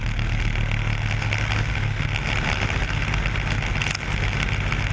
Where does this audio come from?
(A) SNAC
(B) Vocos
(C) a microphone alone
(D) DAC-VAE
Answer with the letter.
C